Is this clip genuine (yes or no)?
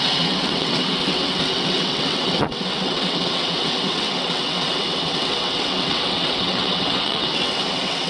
no